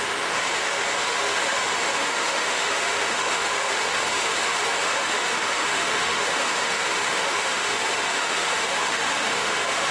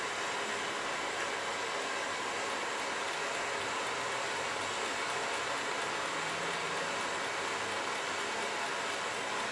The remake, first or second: first